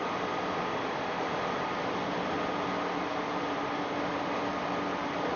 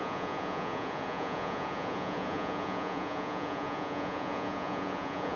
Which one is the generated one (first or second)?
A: second